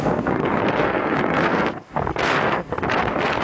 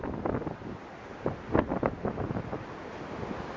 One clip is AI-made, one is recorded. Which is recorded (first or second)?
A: second